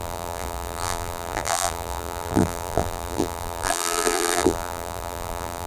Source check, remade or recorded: remade